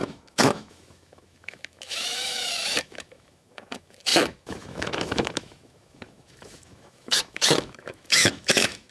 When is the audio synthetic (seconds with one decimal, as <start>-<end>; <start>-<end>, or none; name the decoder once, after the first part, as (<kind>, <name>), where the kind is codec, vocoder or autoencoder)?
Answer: 0.0-8.9 (autoencoder, DAC-VAE)

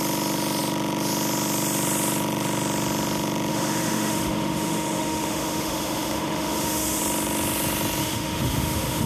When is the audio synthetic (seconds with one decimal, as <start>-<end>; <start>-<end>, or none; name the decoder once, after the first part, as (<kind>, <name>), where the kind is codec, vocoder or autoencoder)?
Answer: 3.5-7.0 (autoencoder, DAC-VAE); 8.0-9.1

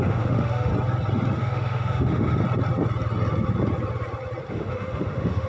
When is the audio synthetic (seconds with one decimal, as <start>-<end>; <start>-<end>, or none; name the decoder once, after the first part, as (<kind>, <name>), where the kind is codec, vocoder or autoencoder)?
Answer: 0.0-0.7 (autoencoder, DAC-VAE); 1.3-2.4; 4.5-5.5

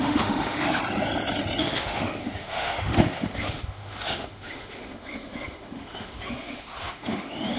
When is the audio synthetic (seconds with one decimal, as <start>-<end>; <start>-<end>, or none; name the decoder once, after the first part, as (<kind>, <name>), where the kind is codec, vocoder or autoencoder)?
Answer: 0.0-0.8 (autoencoder, DAC-VAE); 1.6-7.6

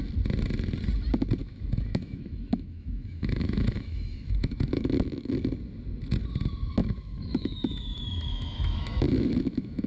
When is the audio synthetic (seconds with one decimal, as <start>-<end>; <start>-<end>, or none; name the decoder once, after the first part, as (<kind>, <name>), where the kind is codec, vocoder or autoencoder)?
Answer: 1.4-5.3 (autoencoder, DAC-VAE); 6.8-9.9

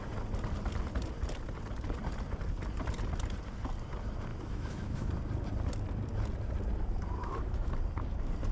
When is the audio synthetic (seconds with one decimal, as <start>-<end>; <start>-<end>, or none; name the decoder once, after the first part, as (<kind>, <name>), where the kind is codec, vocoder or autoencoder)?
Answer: 4.3-5.1 (autoencoder, DAC-VAE); 7.2-7.7

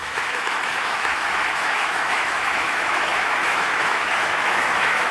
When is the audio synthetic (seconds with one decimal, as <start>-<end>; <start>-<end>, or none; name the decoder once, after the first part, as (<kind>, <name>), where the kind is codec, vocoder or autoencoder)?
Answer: 0.0-5.1 (autoencoder, DAC-VAE)